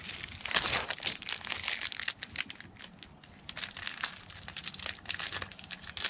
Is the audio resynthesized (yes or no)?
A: no